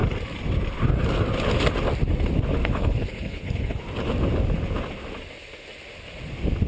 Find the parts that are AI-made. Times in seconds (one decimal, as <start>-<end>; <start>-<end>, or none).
2.6-3.8